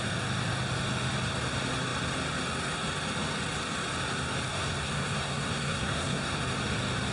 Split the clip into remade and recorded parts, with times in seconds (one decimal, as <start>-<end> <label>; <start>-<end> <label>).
0.0-4.5 recorded; 4.5-6.4 remade; 6.4-7.1 recorded